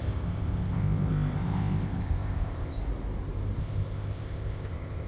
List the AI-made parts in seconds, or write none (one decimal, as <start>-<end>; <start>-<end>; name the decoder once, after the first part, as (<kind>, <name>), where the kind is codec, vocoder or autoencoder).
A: 0.0-2.8 (codec, ZipCodec); 3.6-5.1